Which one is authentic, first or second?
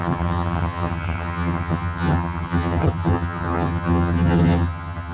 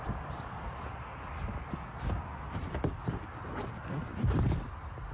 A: second